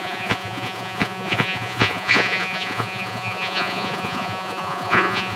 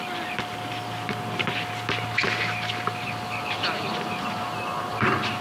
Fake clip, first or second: first